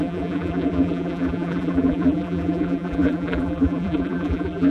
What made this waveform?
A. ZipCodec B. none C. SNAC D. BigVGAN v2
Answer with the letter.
D